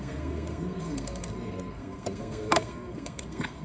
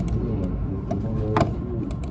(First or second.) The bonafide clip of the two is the second